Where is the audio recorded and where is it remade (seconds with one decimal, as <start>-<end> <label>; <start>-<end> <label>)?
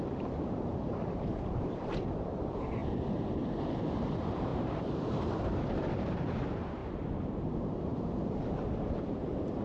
0.0-6.8 remade; 6.8-7.3 recorded; 7.3-9.6 remade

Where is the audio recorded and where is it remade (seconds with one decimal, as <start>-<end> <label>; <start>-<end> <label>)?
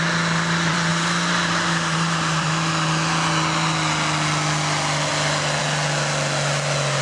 0.0-0.9 recorded; 0.9-2.7 remade; 2.7-7.0 recorded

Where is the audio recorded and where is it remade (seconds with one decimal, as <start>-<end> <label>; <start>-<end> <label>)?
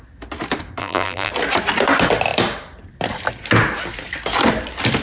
0.0-0.8 recorded; 0.8-1.3 remade; 1.3-5.0 recorded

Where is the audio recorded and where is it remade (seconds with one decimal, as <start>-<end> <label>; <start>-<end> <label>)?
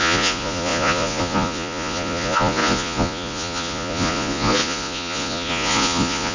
0.0-6.3 remade